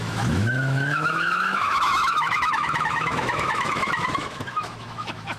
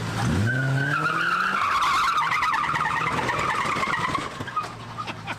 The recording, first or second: second